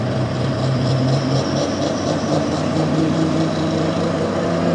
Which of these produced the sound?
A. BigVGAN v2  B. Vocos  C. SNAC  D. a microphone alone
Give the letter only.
A